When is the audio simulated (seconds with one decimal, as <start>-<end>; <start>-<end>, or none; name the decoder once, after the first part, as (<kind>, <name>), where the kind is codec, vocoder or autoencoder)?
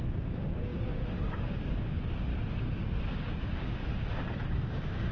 0.0-2.3 (codec, DAC); 3.1-3.8; 4.5-5.1